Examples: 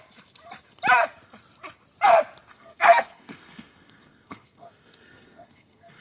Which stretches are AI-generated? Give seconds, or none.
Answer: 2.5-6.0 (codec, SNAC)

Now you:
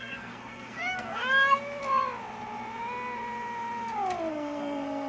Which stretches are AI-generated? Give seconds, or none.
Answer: 0.0-1.2 (codec, SNAC); 4.3-5.1

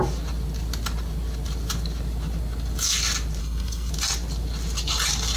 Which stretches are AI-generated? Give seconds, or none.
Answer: 3.4-3.9 (codec, SNAC)

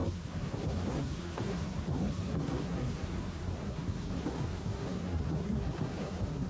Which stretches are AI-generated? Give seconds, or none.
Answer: 0.0-6.5 (codec, SNAC)

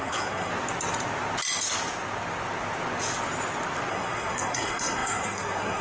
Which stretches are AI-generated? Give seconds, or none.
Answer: 0.0-0.5 (codec, SNAC); 3.9-5.8

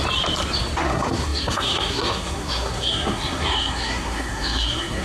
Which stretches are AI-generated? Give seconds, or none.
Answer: 0.8-5.0 (codec, SNAC)